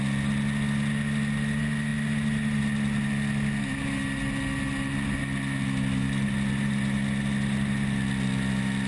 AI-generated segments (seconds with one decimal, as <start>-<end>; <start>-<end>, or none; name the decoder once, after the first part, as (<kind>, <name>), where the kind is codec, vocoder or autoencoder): none